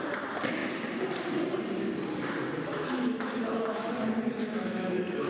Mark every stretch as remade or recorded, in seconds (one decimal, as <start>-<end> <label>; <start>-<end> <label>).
0.0-2.7 recorded; 2.7-3.9 remade; 3.9-4.4 recorded; 4.4-5.3 remade